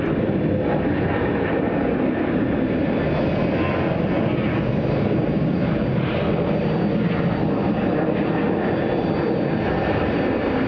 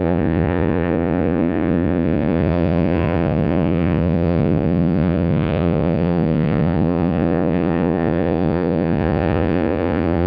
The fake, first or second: second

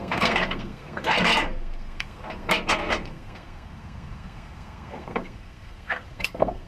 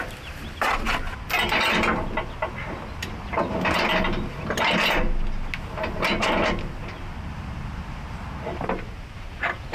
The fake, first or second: first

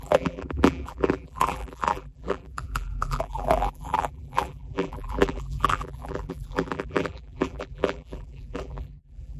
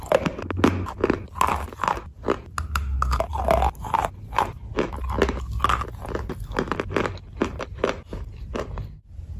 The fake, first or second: first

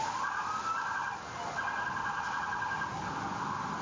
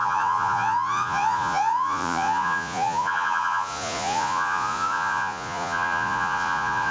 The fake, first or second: second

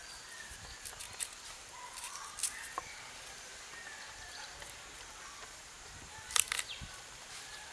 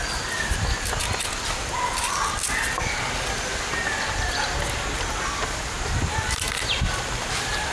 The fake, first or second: first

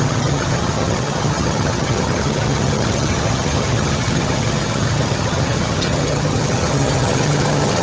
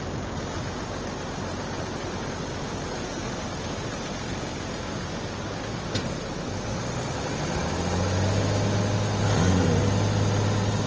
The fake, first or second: first